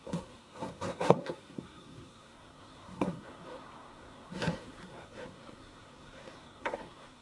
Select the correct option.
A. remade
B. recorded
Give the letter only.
A